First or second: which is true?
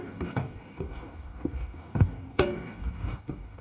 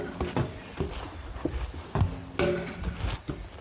second